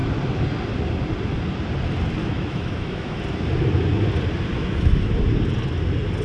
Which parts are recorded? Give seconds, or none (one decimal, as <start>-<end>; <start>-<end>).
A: 0.0-2.2; 3.2-4.5; 5.1-6.2